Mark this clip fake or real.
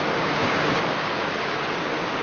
fake